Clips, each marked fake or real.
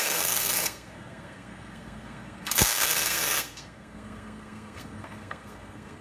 fake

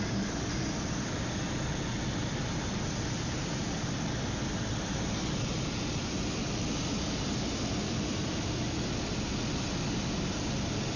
real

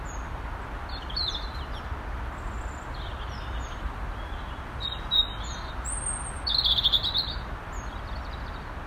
real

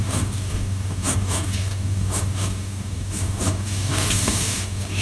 fake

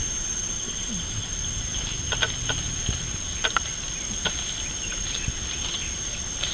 real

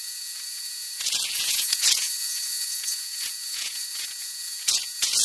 fake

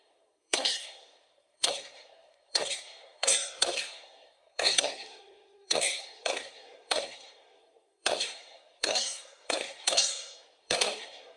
fake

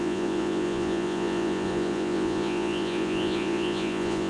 fake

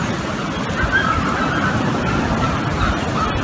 real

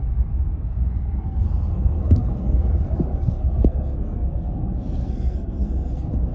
fake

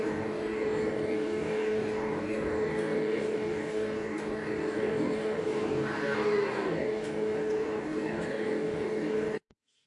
fake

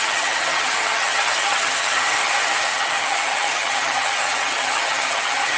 fake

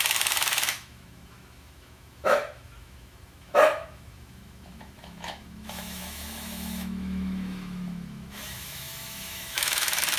fake